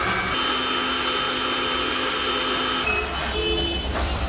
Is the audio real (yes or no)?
yes